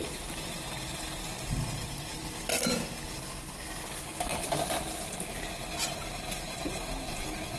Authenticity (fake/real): real